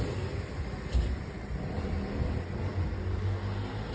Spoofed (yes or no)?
no